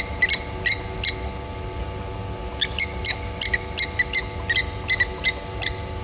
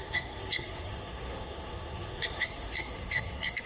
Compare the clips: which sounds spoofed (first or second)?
second